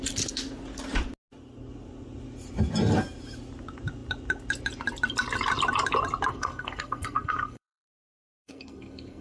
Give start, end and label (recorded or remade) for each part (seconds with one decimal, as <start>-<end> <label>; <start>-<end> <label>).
0.0-6.3 recorded; 6.3-9.2 remade